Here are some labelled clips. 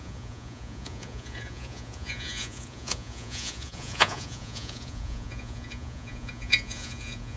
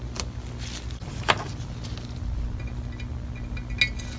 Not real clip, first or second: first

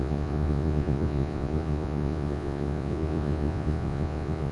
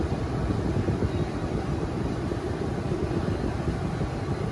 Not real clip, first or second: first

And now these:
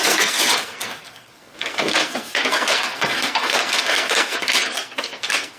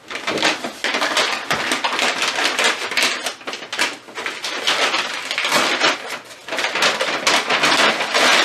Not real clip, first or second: first